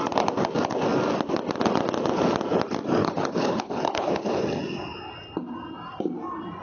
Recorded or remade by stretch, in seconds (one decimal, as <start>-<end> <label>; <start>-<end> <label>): 0.0-3.0 recorded; 3.0-4.4 remade; 4.4-6.6 recorded